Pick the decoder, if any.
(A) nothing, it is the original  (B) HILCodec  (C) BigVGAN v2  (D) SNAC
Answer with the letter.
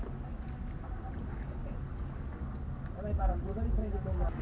A